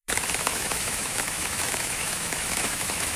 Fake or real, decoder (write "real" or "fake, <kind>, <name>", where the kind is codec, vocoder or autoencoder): fake, autoencoder, DAC-VAE